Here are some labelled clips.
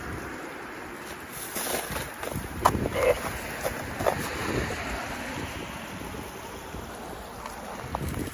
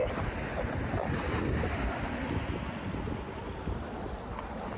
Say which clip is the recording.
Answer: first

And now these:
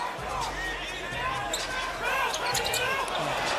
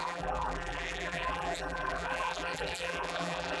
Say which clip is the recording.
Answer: first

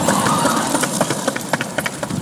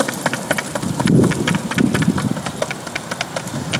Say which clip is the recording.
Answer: second